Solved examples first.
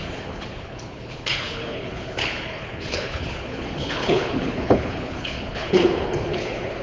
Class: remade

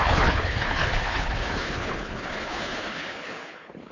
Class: remade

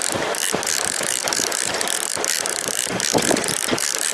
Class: recorded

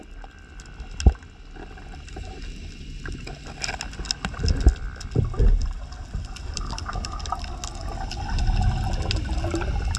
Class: recorded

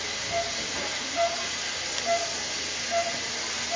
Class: recorded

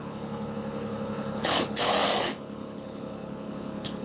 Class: remade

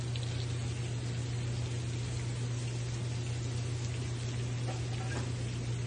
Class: recorded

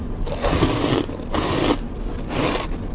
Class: recorded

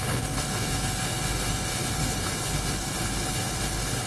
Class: remade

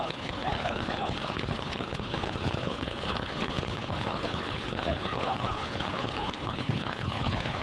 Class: remade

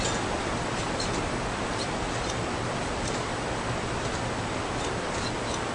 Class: recorded